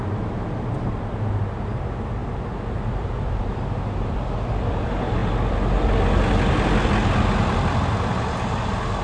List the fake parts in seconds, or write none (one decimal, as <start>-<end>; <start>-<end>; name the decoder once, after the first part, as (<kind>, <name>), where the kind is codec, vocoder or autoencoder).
none